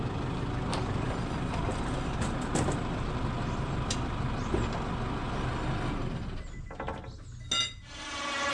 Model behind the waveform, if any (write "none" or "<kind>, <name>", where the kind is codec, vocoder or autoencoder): none